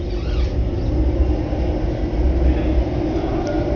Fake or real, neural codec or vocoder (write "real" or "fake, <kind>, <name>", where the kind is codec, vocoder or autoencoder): real